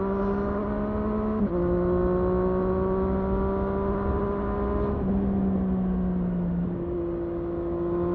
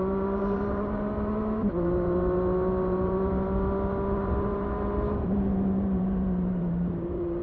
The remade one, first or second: second